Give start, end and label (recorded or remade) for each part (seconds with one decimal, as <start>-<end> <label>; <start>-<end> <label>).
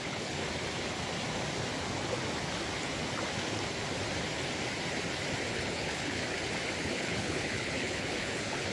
0.0-0.4 remade; 0.4-5.5 recorded; 5.5-6.2 remade; 6.2-6.8 recorded; 6.8-8.7 remade